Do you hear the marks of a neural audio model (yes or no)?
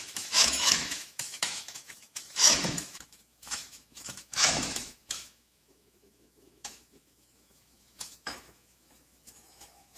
yes